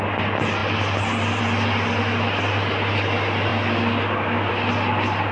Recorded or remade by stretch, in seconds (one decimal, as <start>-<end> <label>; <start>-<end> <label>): 0.0-5.3 recorded